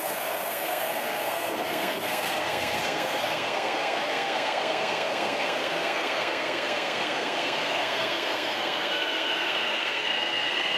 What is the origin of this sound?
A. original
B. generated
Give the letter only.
B